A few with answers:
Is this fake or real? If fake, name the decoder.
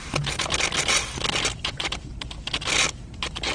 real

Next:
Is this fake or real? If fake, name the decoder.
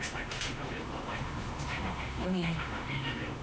fake, autoencoder, DAC-VAE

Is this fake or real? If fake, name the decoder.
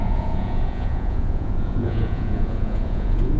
fake, vocoder, Vocos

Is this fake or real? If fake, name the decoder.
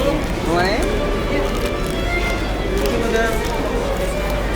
real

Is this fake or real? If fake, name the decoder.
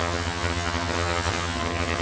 fake, vocoder, HiFi-GAN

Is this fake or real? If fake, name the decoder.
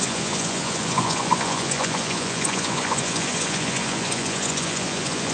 fake, vocoder, Vocos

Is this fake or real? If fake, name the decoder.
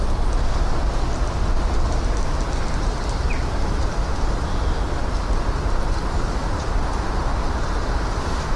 real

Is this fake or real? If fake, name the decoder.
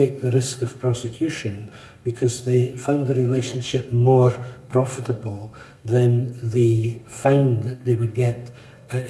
fake, codec, SNAC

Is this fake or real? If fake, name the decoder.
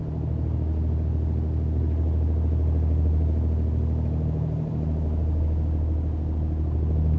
real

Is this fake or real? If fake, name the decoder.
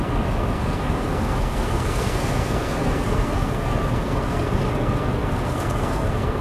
fake, codec, SNAC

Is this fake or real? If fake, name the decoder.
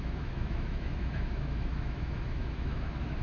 fake, autoencoder, DAC-VAE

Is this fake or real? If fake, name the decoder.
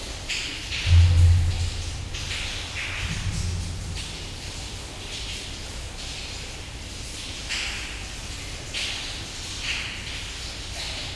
real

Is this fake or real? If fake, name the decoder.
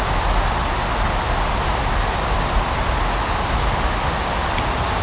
real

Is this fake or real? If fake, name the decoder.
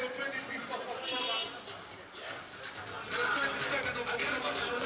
real